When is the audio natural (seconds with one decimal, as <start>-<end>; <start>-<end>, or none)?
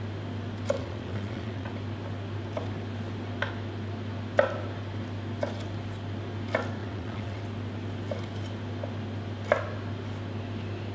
0.0-0.8; 1.7-6.8; 7.4-10.9